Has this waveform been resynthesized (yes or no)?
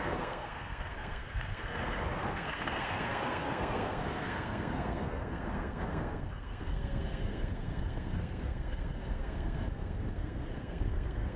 yes